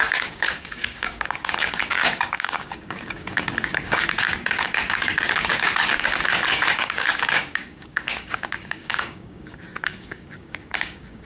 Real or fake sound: fake